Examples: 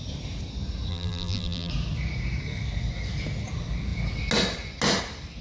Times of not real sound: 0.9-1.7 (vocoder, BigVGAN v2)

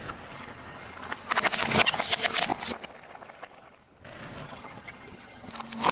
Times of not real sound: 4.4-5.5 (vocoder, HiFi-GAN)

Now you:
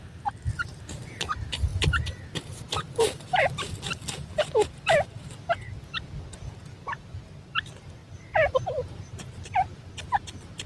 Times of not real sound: 1.7-3.4 (vocoder, BigVGAN v2); 8.0-9.9

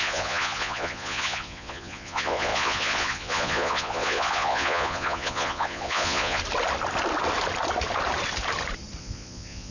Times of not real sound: 0.0-6.4 (vocoder, Vocos); 9.0-9.7

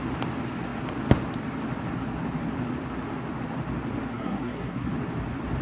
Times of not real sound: 4.1-4.9 (codec, SNAC)